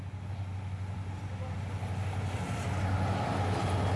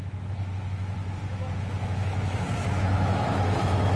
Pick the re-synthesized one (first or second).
second